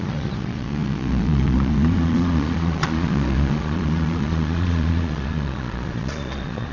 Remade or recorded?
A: remade